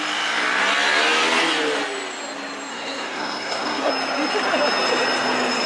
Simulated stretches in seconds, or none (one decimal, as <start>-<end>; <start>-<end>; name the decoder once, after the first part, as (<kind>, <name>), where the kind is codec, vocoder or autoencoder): 2.7-3.9 (codec, SNAC)